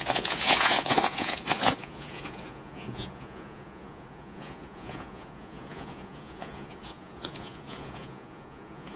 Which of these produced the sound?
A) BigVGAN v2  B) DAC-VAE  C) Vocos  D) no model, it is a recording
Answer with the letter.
C